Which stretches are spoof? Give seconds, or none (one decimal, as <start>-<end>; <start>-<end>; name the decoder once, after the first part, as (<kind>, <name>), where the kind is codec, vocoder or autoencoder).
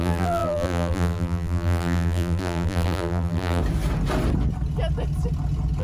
0.0-3.6 (vocoder, BigVGAN v2)